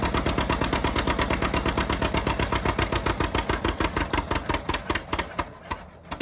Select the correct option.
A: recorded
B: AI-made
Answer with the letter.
A